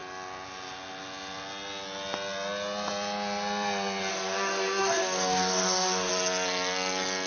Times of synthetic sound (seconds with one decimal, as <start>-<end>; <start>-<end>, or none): 4.1-6.1